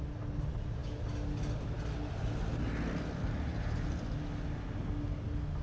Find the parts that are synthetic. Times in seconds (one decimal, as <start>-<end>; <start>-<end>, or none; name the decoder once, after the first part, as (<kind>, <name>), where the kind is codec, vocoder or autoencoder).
none